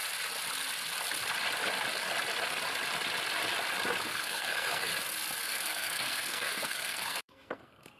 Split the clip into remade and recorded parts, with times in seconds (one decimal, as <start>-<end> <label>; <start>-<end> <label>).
0.0-4.0 recorded; 4.0-4.9 remade; 4.9-5.4 recorded; 5.4-8.0 remade